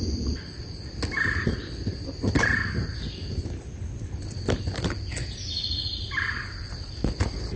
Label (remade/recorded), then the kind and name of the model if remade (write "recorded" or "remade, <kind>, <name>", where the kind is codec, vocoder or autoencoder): recorded